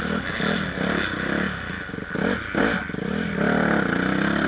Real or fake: real